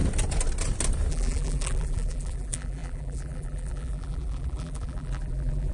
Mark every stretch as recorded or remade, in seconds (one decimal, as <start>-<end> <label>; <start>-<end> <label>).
0.0-1.1 recorded; 1.1-5.7 remade